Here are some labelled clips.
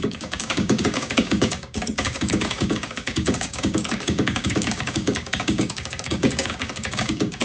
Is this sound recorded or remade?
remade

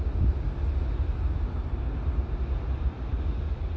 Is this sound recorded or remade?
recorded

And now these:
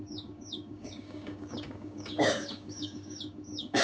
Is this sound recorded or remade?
remade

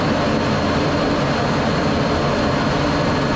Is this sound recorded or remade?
recorded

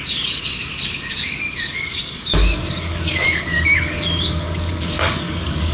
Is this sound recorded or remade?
remade